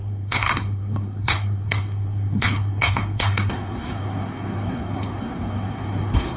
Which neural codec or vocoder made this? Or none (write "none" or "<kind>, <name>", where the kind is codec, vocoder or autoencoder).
codec, SNAC